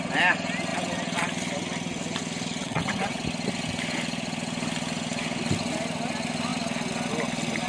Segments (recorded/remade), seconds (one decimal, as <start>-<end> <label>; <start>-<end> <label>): 0.0-2.6 recorded; 2.6-3.2 remade; 3.2-7.7 recorded